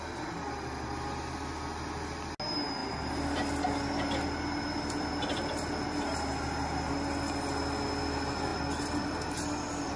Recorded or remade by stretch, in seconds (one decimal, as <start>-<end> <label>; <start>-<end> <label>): 0.0-10.0 recorded